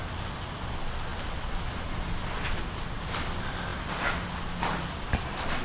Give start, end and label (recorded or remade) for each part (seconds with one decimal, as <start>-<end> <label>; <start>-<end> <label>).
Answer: 0.0-5.6 recorded